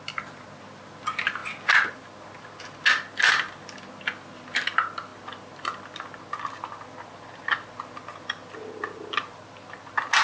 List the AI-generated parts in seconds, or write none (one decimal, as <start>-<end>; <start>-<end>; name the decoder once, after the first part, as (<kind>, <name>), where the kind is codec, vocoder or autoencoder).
none